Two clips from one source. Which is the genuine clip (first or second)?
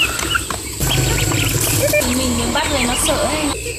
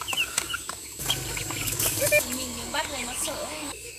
first